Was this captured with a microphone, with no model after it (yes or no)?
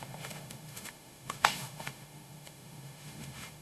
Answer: no